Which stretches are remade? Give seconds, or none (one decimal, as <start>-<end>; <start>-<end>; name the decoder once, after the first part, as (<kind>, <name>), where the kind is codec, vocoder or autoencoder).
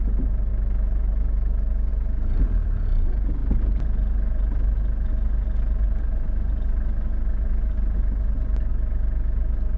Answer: none